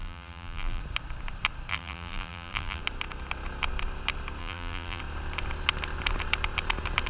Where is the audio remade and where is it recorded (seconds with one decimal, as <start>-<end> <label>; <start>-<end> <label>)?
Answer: 0.0-0.8 remade; 0.8-1.7 recorded; 1.7-2.8 remade; 2.8-4.4 recorded; 4.4-5.0 remade; 5.0-7.1 recorded